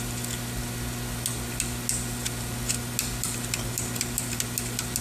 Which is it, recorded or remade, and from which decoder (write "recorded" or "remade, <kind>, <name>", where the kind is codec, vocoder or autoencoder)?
recorded